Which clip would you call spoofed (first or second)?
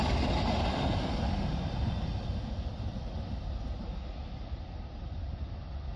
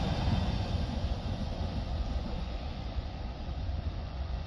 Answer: second